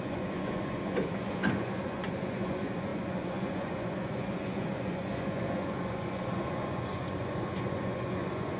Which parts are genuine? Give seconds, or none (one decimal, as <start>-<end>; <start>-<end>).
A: none